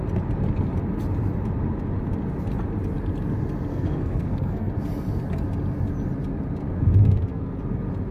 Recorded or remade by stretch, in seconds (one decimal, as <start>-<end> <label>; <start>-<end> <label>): 0.0-3.7 recorded; 3.7-4.7 remade; 4.7-6.6 recorded; 6.6-7.6 remade; 7.6-8.1 recorded